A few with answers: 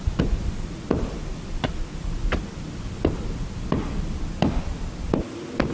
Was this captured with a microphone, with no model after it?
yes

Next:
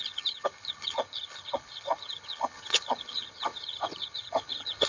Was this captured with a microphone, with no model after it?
no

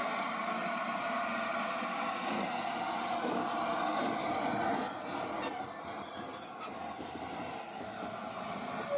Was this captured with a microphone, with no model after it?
yes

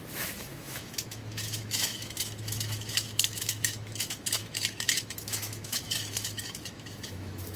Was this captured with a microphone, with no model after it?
no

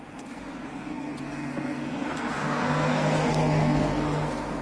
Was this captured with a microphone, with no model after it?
no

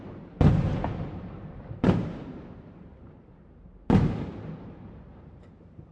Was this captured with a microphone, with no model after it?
no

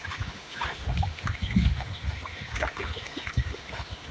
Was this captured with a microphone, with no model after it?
no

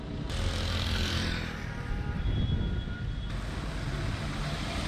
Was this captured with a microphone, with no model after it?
no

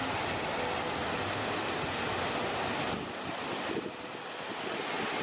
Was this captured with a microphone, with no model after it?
yes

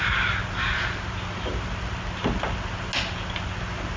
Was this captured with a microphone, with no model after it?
yes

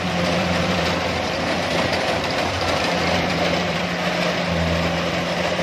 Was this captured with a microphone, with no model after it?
no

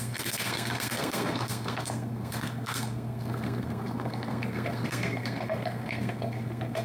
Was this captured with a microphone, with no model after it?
no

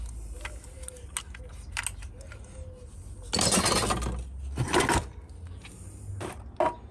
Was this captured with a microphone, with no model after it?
yes